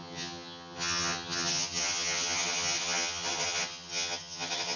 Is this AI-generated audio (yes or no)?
yes